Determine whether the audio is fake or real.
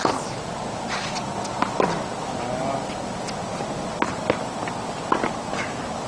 real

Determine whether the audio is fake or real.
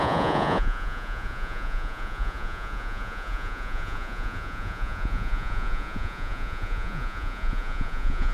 fake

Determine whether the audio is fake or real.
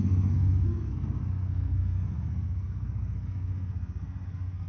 fake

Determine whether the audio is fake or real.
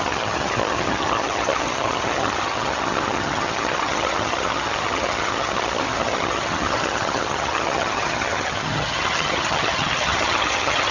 fake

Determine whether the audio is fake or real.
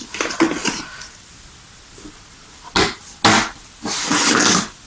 real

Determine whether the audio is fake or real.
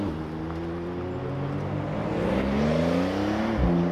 real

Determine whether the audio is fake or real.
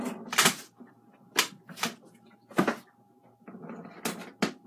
real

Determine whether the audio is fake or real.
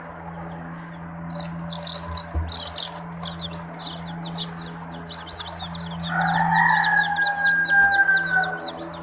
real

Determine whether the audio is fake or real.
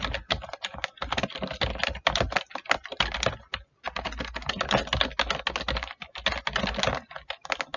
real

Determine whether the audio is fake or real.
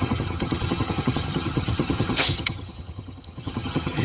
fake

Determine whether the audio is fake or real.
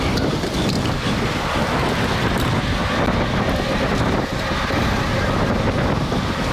real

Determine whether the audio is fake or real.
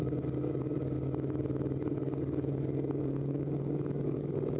fake